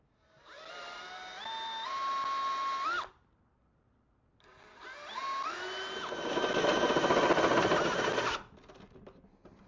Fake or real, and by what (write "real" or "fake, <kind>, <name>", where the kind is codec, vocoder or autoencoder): real